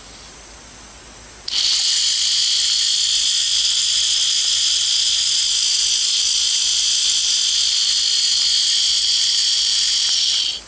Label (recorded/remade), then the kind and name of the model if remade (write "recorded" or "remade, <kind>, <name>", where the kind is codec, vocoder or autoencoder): remade, vocoder, BigVGAN v2